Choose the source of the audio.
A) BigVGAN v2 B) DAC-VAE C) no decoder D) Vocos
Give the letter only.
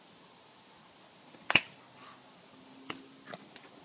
C